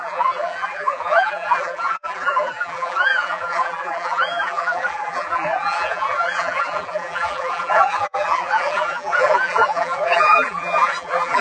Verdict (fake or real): fake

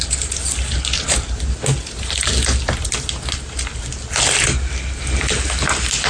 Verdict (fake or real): real